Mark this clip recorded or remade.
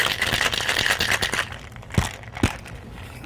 recorded